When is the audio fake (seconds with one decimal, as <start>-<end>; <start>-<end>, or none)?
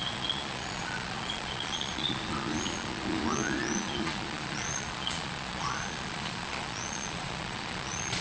0.0-8.2